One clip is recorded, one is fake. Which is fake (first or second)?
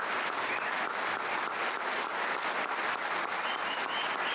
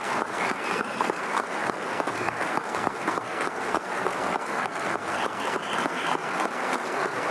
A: second